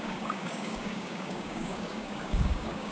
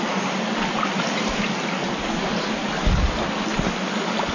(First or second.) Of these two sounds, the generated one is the first